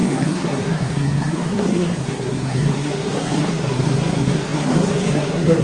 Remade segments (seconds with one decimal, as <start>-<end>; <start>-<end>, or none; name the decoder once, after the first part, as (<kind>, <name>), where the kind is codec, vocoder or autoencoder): 0.0-5.6 (codec, SNAC)